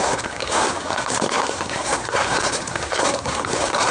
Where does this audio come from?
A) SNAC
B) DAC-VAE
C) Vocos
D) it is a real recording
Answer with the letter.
A